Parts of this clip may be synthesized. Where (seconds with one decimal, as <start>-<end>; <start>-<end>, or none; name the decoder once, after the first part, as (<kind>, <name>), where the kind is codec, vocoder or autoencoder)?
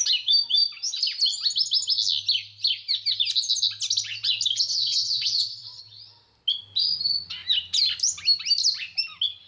4.7-5.8 (vocoder, WaveNeXt)